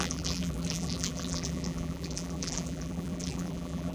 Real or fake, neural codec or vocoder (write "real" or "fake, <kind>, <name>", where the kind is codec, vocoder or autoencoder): fake, vocoder, BigVGAN v2